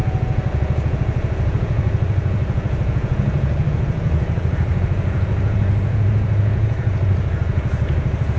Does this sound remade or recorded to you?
remade